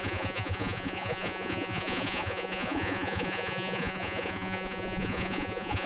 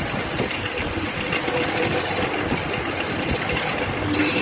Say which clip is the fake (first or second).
first